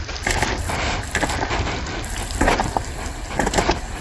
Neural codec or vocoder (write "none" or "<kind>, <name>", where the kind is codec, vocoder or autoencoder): none